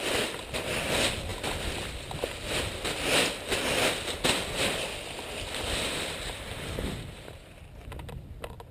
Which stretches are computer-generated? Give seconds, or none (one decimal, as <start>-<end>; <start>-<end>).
none